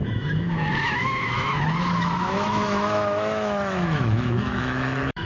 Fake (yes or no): yes